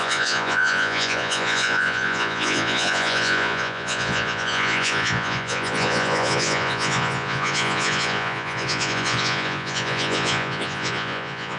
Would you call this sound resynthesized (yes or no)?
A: yes